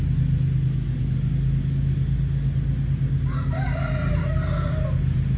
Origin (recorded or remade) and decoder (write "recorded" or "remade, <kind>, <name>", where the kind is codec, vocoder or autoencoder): recorded